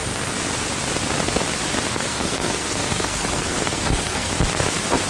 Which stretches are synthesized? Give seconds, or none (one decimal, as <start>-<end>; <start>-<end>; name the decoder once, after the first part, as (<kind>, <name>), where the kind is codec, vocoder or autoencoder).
1.9-4.3 (codec, SNAC)